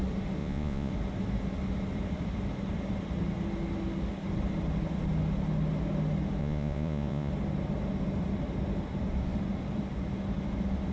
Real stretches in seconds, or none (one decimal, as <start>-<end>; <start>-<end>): 0.0-0.4; 0.9-6.4; 7.3-10.9